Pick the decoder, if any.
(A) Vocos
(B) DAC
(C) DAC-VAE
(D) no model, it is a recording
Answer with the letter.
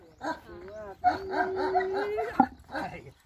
D